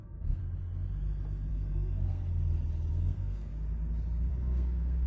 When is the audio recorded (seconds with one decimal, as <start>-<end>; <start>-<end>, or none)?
0.4-1.5; 2.2-2.9; 3.5-4.3